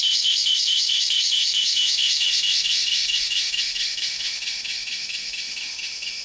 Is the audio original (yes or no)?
no